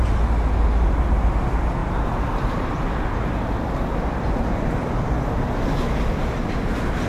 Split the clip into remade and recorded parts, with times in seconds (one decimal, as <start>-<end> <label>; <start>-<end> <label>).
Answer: 0.0-1.8 recorded; 1.8-2.7 remade; 2.7-7.1 recorded